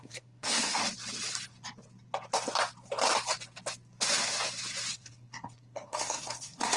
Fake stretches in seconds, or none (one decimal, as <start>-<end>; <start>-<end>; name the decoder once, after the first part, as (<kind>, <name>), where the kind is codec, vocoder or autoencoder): 0.0-0.8 (codec, SNAC); 4.9-6.8